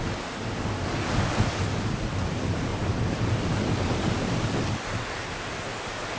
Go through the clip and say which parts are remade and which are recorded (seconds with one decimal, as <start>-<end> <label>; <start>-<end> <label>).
0.0-6.2 recorded